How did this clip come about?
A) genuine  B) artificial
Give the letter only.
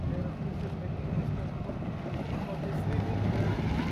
A